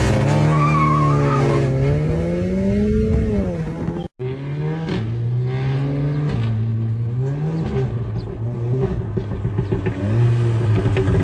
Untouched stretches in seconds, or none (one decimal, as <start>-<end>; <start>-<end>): 0.0-11.2